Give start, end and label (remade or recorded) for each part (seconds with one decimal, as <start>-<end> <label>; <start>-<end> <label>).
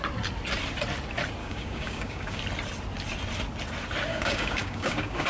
0.0-1.4 recorded; 1.4-2.4 remade; 2.4-4.1 recorded; 4.1-5.3 remade